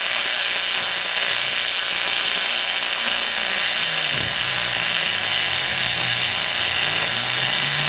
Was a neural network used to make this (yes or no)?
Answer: yes